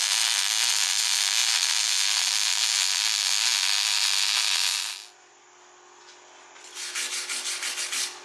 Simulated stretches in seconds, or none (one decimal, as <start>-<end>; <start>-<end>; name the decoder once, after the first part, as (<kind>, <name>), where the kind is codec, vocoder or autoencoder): none